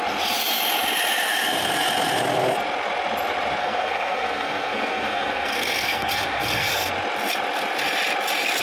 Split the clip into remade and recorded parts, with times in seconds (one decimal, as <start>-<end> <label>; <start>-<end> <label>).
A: 0.0-3.6 recorded; 3.6-6.9 remade; 6.9-8.6 recorded